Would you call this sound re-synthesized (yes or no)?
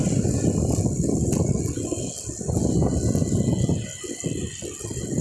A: no